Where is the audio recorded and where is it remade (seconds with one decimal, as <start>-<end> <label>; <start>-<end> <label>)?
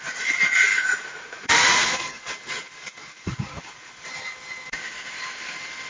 0.0-0.7 recorded; 0.7-2.2 remade; 2.2-3.0 recorded; 3.0-3.9 remade; 3.9-5.9 recorded